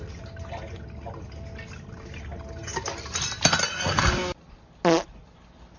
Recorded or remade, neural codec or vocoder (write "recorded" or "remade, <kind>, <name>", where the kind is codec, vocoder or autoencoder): recorded